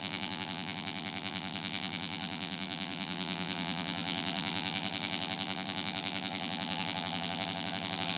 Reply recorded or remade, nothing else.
remade